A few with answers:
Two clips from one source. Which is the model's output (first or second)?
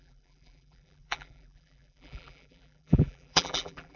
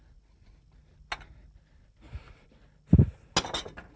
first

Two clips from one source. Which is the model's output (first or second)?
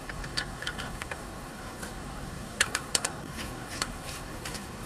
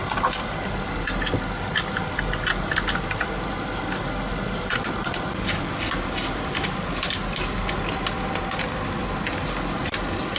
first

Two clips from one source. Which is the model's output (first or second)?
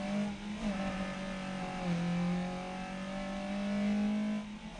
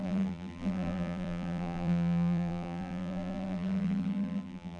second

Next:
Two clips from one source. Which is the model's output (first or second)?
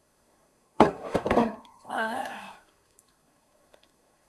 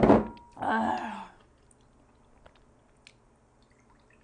first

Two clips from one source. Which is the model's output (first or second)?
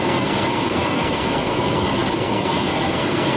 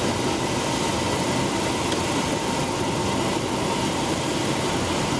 first